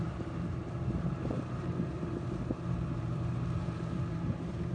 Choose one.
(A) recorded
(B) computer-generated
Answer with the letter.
B